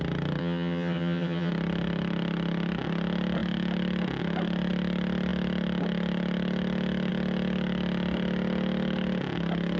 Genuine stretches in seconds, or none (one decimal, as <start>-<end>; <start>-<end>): 0.0-0.4; 1.5-9.8